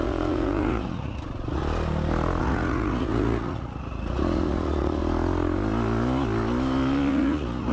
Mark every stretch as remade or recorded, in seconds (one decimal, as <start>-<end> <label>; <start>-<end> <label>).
0.0-1.6 remade; 1.6-2.4 recorded; 2.4-5.0 remade; 5.0-7.1 recorded; 7.1-7.7 remade